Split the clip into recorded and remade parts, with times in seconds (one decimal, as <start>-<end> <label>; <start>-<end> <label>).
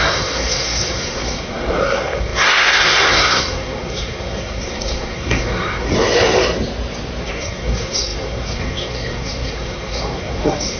0.0-5.9 remade; 5.9-7.2 recorded; 7.2-10.8 remade